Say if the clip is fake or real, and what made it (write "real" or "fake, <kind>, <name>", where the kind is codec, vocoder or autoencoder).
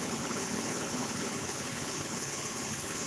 fake, codec, HILCodec